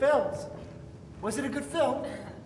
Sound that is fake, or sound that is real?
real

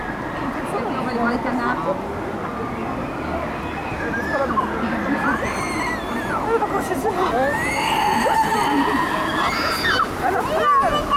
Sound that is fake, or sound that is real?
real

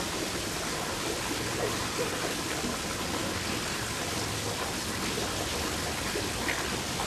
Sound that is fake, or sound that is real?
real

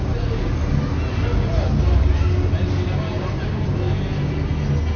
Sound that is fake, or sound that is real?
real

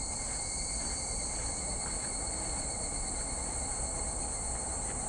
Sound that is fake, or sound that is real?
real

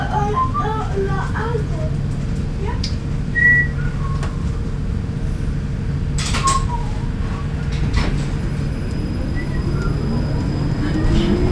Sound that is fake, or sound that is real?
real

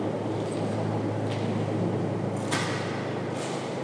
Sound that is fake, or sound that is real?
real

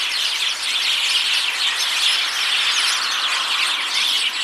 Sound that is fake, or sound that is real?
real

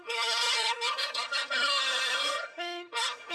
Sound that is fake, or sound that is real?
fake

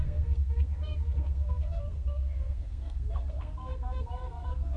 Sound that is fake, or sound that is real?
fake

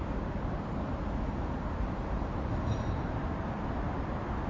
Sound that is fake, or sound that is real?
real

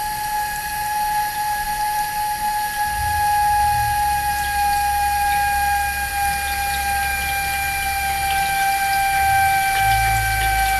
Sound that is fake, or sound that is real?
real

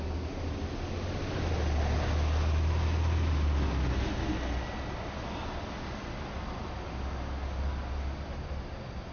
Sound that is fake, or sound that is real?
real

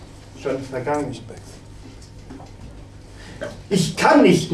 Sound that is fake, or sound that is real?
real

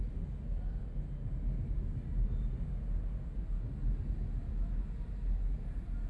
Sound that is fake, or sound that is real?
real